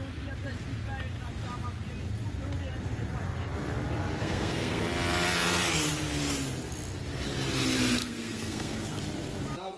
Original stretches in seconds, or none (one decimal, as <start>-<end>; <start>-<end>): 0.0-4.2; 4.8-8.0; 9.0-9.8